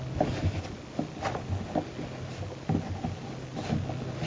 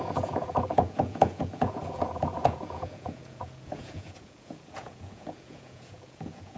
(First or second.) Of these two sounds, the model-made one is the second